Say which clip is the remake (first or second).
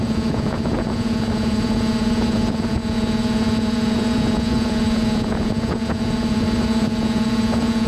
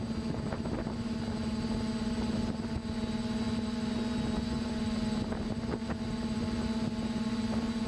first